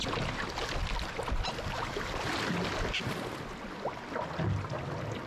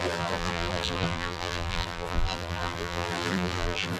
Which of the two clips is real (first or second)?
first